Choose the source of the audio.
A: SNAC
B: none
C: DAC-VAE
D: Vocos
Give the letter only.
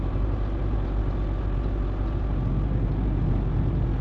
B